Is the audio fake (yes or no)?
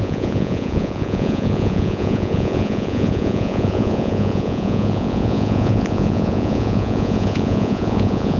yes